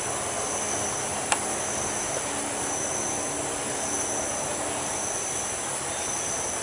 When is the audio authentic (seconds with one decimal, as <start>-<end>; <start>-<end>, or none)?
0.0-6.6